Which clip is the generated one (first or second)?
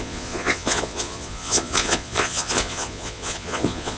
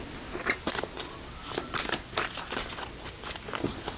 first